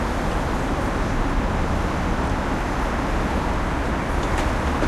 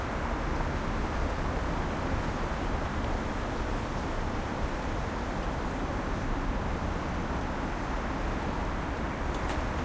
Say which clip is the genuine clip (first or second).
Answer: first